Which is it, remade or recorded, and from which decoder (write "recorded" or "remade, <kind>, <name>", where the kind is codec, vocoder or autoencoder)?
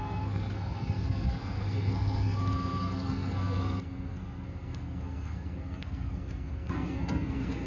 remade, codec, SNAC